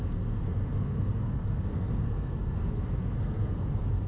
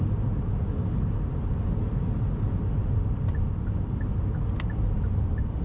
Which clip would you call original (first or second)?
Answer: second